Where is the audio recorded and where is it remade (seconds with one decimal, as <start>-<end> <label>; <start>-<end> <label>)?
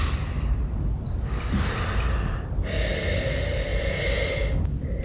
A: 0.0-5.0 recorded